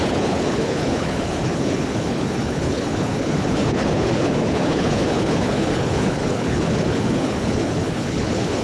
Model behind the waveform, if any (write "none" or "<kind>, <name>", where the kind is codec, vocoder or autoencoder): codec, HILCodec